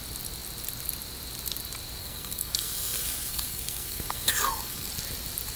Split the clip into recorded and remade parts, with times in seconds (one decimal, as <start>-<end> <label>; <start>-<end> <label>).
0.0-2.0 recorded; 2.0-4.9 remade; 4.9-5.6 recorded